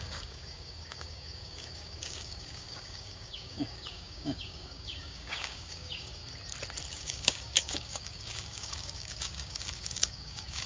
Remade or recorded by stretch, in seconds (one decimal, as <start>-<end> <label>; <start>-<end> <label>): 0.0-6.2 remade; 6.2-6.9 recorded; 6.9-10.7 remade